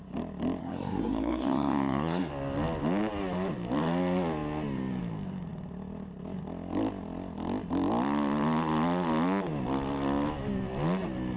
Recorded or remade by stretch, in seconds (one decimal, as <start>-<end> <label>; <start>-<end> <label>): 0.0-0.6 recorded; 0.6-2.3 remade; 2.3-11.4 recorded